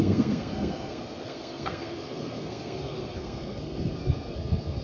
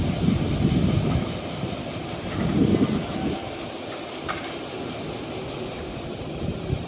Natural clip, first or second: second